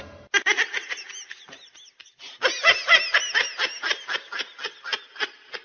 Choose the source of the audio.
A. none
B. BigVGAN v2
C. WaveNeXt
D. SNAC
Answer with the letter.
A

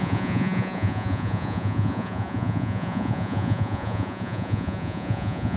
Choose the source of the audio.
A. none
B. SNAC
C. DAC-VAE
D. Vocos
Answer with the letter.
D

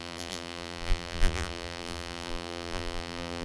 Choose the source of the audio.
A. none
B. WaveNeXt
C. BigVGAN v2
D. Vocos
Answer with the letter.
C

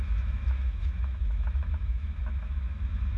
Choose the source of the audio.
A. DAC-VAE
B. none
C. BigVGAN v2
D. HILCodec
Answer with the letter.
A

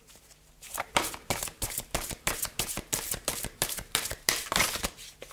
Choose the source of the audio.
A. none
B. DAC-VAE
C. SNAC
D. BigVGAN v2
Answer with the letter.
D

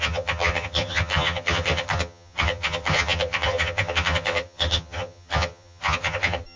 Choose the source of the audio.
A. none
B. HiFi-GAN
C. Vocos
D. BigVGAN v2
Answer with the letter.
B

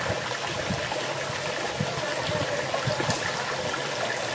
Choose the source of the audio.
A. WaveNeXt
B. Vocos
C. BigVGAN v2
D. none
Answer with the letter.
D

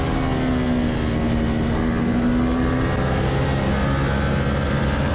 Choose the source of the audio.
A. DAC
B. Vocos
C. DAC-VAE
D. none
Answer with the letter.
D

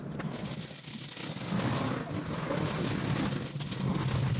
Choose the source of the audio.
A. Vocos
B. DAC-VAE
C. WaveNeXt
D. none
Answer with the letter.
D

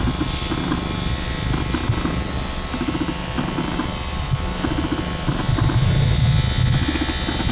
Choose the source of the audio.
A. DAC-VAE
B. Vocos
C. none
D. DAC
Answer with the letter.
C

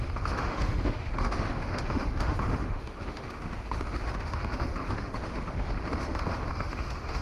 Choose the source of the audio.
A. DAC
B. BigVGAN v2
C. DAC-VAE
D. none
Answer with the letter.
C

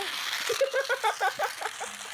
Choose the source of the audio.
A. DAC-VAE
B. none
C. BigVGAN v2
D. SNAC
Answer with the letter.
B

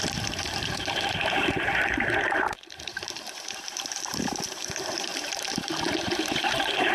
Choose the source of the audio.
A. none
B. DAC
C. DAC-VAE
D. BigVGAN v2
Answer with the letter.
D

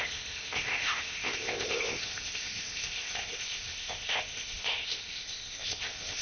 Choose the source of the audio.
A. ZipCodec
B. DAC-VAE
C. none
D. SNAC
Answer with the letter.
A